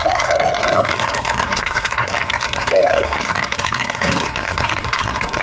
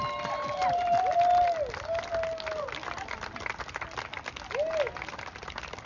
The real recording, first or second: second